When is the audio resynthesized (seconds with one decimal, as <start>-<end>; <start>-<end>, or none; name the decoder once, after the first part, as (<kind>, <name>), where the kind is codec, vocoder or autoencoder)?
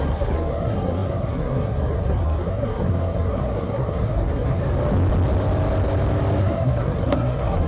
0.0-4.6 (codec, SNAC); 6.4-7.7